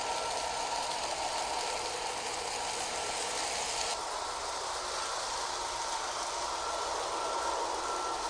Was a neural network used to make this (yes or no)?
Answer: no